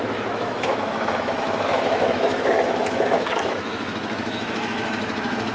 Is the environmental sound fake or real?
fake